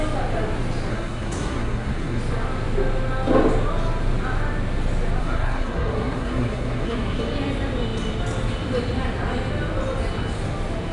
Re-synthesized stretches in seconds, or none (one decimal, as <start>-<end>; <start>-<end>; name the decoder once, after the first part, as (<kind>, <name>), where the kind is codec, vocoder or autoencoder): 0.9-2.2 (codec, SNAC); 5.2-7.2